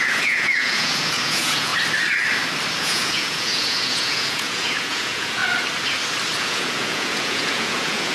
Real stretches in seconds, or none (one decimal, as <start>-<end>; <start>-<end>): 1.7-2.8; 5.4-6.4